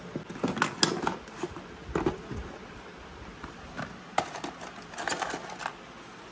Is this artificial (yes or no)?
no